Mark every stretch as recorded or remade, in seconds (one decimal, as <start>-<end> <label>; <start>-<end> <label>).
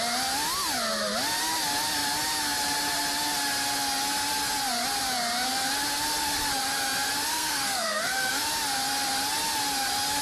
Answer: 0.0-7.3 recorded; 7.3-8.4 remade; 8.4-10.2 recorded